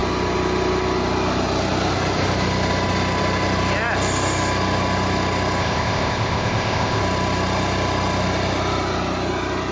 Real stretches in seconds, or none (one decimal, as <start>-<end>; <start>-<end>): 0.0-5.6; 7.0-9.7